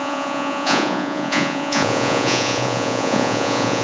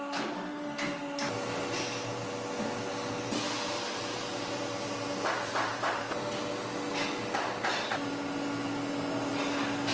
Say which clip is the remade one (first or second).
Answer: first